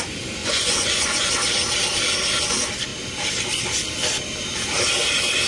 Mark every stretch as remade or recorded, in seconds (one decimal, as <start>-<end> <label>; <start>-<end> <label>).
0.0-0.4 recorded; 0.4-1.3 remade; 1.3-5.5 recorded